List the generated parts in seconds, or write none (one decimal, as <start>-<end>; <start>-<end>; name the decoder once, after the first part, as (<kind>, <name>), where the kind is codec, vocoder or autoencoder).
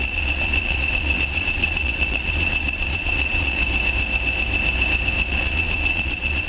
0.0-3.6 (vocoder, Vocos); 5.3-6.5